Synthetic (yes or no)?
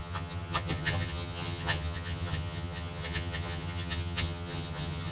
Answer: yes